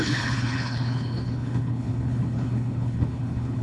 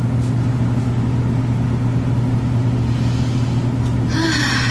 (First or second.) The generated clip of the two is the first